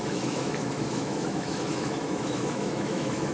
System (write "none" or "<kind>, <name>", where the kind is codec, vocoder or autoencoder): autoencoder, DAC-VAE